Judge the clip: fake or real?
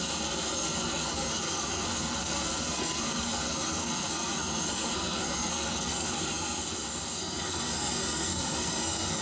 fake